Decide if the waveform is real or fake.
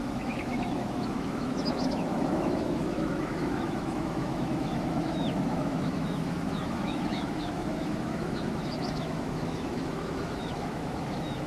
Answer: fake